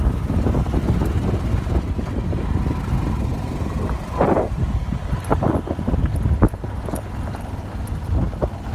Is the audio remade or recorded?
recorded